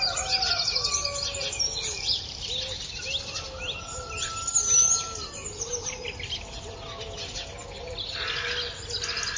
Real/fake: real